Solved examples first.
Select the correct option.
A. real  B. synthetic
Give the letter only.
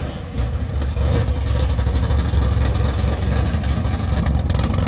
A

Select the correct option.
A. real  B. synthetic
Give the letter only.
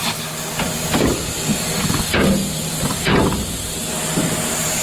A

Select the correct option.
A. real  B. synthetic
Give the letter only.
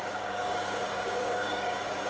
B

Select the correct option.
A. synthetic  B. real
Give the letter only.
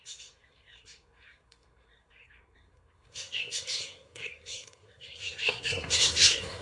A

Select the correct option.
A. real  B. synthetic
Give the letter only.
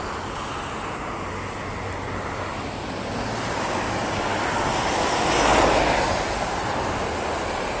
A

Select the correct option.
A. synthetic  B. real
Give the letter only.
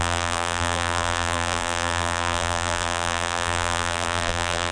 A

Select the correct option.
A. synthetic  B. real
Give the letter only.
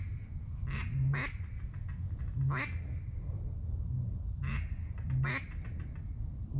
B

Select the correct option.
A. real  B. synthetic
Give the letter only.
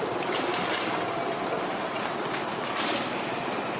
A